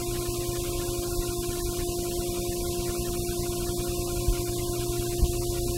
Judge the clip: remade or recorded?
recorded